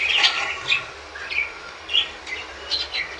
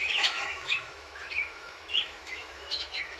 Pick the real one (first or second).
first